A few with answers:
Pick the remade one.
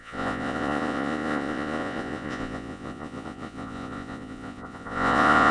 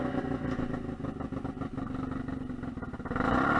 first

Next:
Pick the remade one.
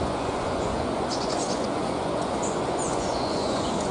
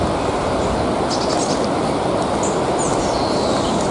first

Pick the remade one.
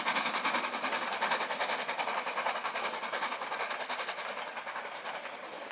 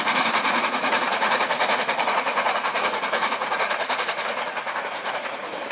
second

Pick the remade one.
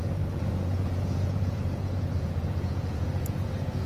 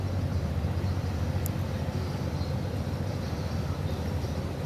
first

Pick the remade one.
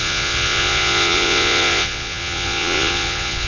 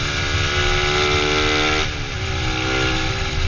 first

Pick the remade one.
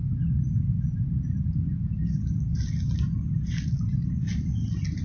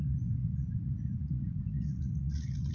second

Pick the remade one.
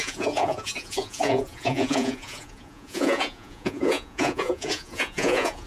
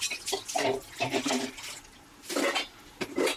first